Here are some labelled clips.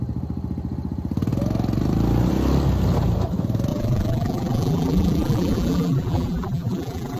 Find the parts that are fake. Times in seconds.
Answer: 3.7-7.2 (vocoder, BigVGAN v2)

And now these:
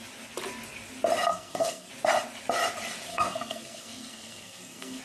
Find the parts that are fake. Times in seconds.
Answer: 1.3-1.9 (codec, SNAC); 3.1-5.0

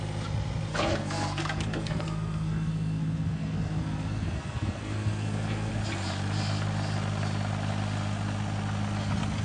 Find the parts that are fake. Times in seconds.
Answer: 0.7-5.7 (codec, SNAC)

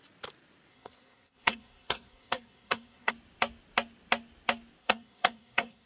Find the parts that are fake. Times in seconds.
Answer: 0.7-3.1 (codec, SNAC); 4.8-5.9

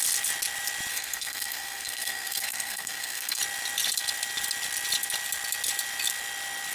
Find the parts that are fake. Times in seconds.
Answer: 0.9-3.4 (codec, SNAC)

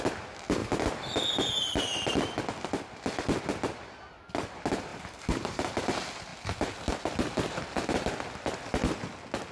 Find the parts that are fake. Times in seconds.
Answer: 4.9-5.7 (vocoder, BigVGAN v2)

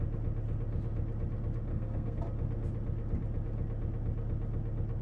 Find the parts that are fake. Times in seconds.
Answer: 1.7-2.2 (codec, SNAC)

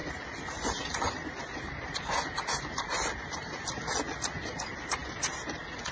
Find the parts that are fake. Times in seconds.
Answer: none